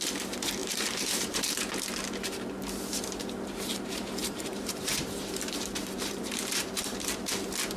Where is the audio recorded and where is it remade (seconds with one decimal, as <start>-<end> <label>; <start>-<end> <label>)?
0.0-0.6 recorded; 0.6-1.5 remade; 1.5-4.2 recorded; 4.2-7.1 remade; 7.1-7.8 recorded